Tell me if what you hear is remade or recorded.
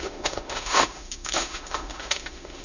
remade